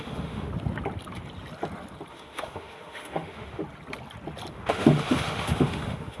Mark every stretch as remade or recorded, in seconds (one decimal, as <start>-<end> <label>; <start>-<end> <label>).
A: 0.0-0.5 remade; 0.5-2.1 recorded; 2.1-3.6 remade; 3.6-4.5 recorded; 4.5-6.2 remade